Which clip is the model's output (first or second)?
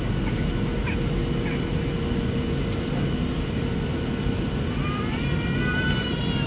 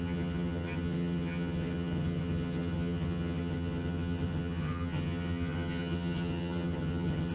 second